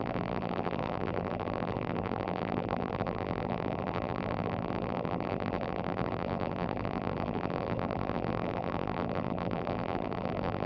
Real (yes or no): no